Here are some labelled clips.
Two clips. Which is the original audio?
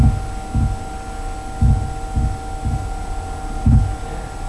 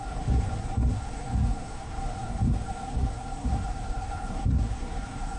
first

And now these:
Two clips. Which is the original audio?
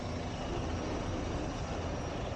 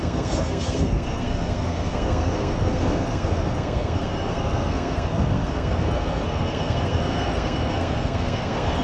first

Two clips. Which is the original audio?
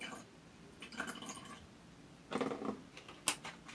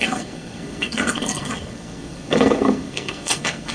first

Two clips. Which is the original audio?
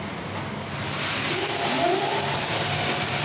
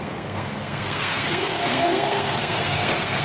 first